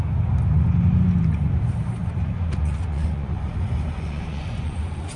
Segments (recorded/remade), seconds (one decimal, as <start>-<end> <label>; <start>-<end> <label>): 0.0-2.0 recorded; 2.0-5.2 remade